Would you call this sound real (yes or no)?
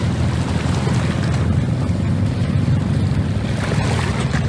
yes